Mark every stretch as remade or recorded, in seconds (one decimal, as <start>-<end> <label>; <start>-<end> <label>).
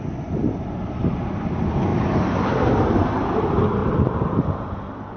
0.0-1.9 recorded; 1.9-2.7 remade; 2.7-3.8 recorded; 3.8-4.4 remade; 4.4-5.2 recorded